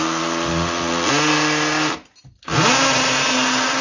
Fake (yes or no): no